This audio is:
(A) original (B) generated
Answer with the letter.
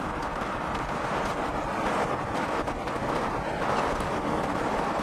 A